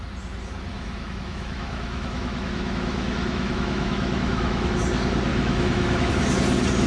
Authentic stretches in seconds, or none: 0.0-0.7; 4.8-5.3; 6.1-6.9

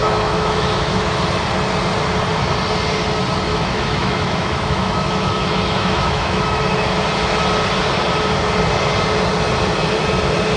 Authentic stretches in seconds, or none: 1.1-3.5; 6.6-10.6

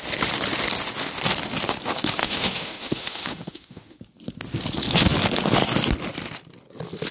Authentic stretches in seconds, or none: 0.0-2.2; 4.0-7.1

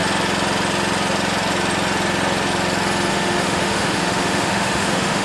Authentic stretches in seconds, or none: 0.0-3.1

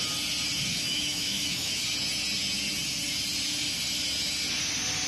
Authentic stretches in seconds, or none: 0.0-0.7; 1.8-5.1